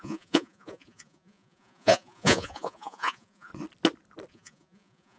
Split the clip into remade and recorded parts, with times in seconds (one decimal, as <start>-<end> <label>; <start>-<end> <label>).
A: 0.0-3.5 remade; 3.5-4.3 recorded; 4.3-5.2 remade